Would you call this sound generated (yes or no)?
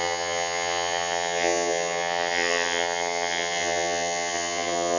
yes